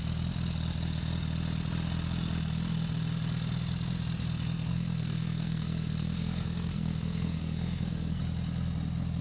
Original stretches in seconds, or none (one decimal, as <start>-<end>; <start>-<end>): 0.0-4.7; 8.2-9.2